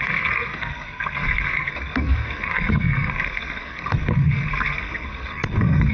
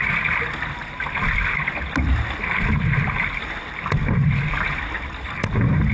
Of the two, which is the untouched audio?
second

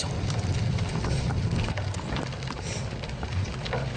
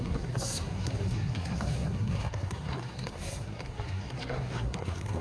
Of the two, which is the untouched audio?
first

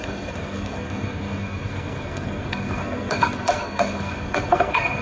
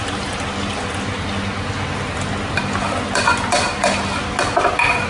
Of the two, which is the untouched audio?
second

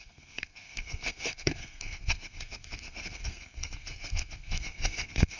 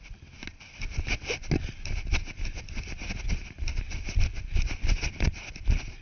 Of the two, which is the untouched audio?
second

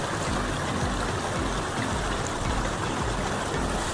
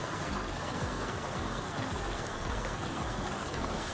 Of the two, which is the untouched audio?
first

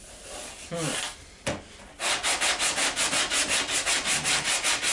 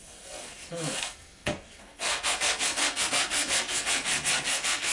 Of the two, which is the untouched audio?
first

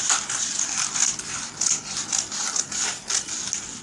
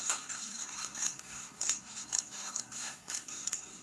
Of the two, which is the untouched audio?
first